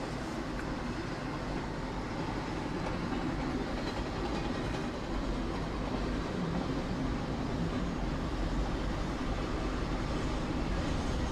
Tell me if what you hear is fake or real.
real